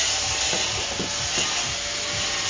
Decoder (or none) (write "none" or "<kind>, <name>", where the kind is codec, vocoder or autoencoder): none